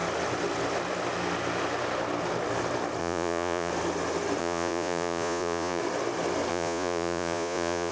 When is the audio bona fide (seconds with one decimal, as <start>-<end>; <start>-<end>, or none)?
0.0-3.0; 3.7-4.4; 5.8-6.5